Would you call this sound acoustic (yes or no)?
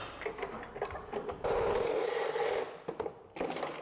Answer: yes